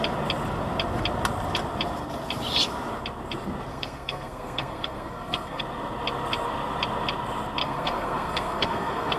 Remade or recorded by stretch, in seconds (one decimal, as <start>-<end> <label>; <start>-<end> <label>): 0.0-3.7 recorded; 3.7-5.6 remade; 5.6-7.6 recorded; 7.6-9.2 remade